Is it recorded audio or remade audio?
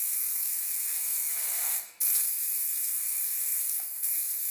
remade